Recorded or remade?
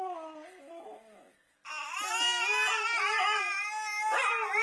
recorded